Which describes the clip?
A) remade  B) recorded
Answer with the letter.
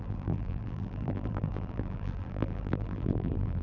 A